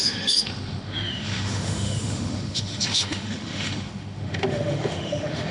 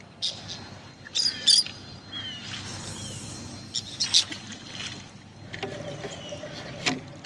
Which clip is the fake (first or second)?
first